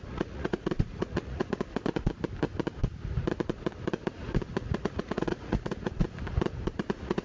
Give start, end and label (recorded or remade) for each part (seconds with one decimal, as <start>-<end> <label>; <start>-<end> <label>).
0.0-1.4 remade; 1.4-4.6 recorded; 4.6-6.0 remade; 6.0-6.7 recorded; 6.7-7.2 remade